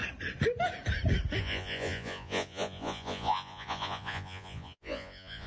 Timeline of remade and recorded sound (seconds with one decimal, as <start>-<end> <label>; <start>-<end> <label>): 0.0-1.4 recorded; 1.4-5.5 remade